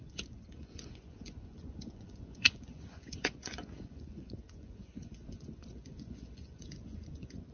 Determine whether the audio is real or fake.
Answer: fake